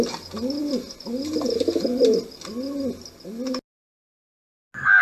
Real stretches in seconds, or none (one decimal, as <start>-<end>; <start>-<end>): 0.0-5.0